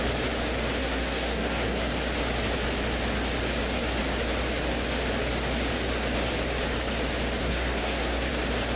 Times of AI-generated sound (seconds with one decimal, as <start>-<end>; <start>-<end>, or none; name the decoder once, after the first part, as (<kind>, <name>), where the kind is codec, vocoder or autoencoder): 0.8-1.9 (codec, SNAC); 7.4-8.3